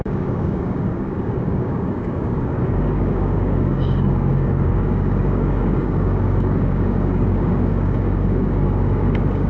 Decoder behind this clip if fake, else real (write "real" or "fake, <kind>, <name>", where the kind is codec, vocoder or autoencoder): fake, codec, DAC